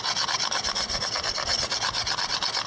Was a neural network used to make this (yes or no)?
no